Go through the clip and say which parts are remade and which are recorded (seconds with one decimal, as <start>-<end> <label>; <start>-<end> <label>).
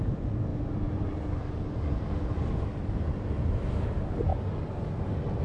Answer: 0.0-0.5 recorded; 0.5-1.5 remade; 1.5-5.4 recorded